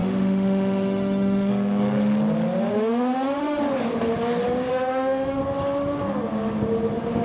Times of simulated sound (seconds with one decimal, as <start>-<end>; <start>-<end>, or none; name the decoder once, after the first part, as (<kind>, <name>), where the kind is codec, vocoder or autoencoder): 0.0-1.5 (autoencoder, DAC-VAE); 2.7-3.6; 4.7-5.4